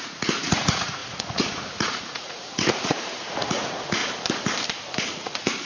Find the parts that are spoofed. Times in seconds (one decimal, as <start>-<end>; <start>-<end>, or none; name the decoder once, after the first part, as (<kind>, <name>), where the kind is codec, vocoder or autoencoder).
0.0-4.0 (vocoder, Vocos); 5.0-5.7